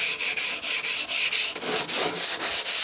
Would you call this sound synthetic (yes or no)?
no